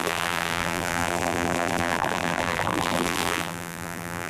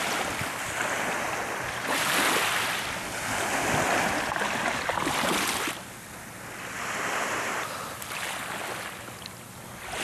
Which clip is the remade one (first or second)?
first